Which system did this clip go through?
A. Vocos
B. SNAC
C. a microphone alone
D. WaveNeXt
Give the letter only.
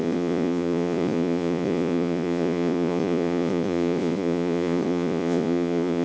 A